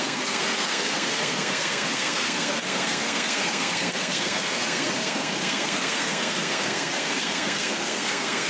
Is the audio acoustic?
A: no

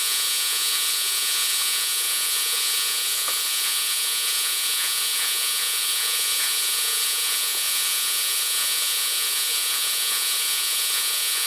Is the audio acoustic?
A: no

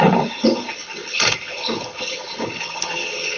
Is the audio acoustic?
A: no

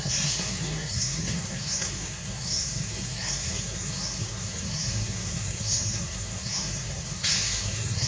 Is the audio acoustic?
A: no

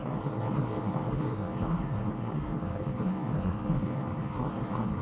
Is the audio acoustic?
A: no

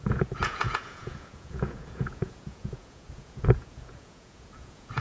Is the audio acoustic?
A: no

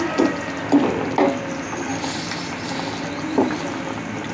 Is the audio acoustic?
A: yes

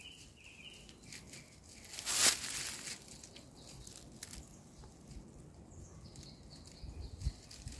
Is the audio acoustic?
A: yes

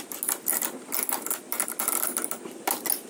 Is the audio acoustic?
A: yes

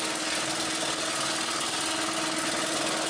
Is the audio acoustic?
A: yes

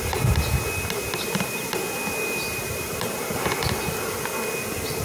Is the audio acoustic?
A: yes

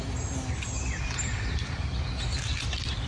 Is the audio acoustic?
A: yes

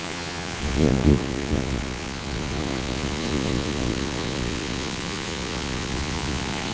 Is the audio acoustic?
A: no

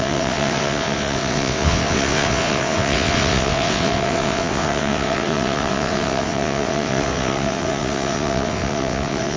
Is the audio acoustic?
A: no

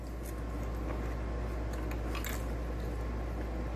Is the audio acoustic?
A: yes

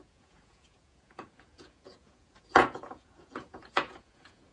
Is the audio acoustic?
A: no